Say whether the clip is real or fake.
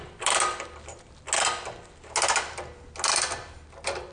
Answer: real